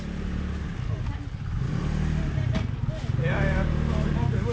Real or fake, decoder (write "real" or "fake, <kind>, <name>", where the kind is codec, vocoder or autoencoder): real